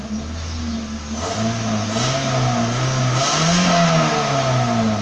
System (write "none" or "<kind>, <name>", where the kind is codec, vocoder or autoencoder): none